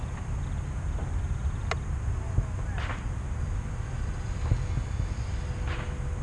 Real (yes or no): yes